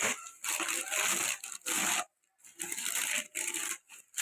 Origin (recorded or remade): recorded